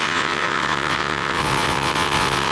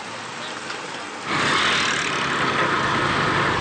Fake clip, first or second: first